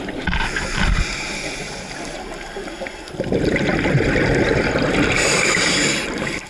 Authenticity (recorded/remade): recorded